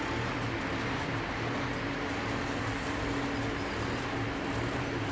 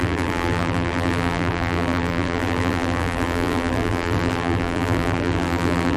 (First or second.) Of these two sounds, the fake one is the second